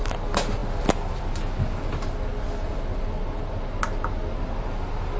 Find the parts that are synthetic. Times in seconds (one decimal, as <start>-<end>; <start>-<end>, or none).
none